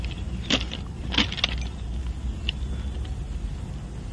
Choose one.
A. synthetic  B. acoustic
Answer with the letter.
B